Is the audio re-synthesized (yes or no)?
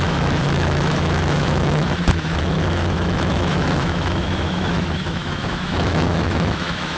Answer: yes